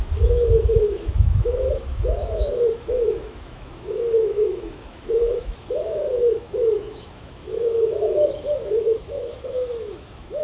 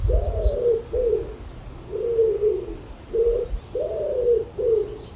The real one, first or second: second